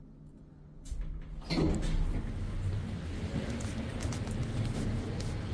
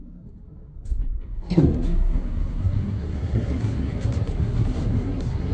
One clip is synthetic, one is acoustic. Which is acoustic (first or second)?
first